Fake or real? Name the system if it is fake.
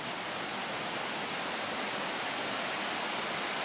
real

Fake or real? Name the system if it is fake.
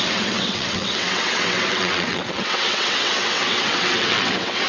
fake, vocoder, WaveNeXt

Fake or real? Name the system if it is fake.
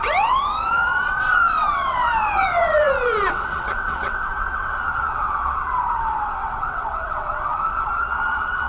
fake, vocoder, WaveNeXt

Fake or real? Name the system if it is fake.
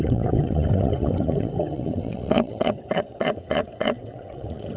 fake, vocoder, WaveNeXt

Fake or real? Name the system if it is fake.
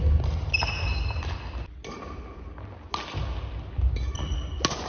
real